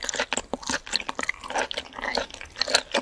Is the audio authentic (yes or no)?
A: yes